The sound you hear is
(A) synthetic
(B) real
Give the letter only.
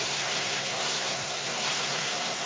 A